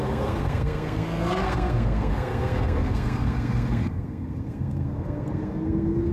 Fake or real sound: fake